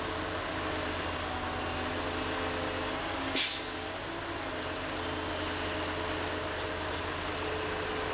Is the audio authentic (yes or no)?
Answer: yes